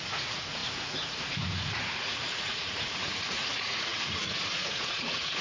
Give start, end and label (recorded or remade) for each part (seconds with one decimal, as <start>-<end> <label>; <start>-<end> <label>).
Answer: 0.0-5.4 remade